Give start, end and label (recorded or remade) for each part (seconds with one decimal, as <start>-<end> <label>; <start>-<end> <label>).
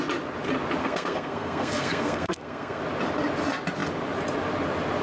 0.0-0.8 recorded; 0.8-2.8 remade; 2.8-5.0 recorded